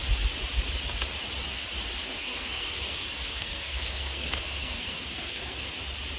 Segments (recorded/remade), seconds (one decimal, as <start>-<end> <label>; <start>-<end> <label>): 0.0-2.0 recorded; 2.0-5.7 remade; 5.7-6.2 recorded